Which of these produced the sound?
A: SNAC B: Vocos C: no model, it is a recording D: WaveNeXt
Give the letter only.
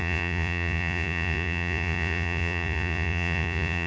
B